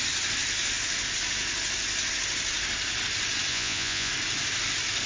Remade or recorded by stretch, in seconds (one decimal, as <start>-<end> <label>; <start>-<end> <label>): 0.0-3.5 recorded; 3.5-4.1 remade; 4.1-5.1 recorded